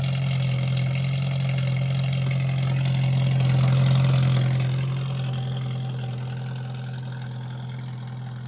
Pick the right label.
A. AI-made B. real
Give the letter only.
B